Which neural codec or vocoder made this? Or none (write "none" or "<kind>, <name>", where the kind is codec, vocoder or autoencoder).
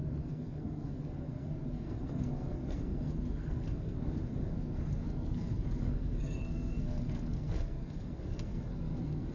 codec, SNAC